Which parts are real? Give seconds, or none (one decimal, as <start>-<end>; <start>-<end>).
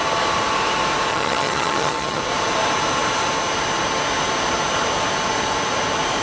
0.0-1.1; 2.2-6.2